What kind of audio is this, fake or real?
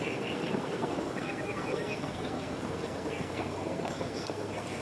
fake